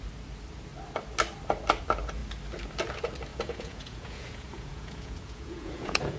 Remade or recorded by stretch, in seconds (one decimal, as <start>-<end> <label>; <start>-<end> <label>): 0.0-3.3 recorded; 3.3-6.2 remade